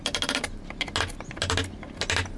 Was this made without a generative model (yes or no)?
yes